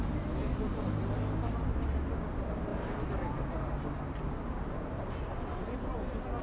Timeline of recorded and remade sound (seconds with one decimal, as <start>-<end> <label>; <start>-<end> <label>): 0.0-6.4 recorded